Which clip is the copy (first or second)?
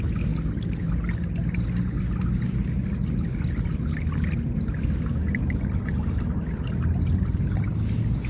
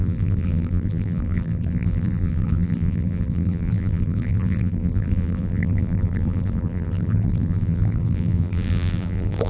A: second